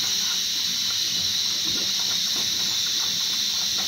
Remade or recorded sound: remade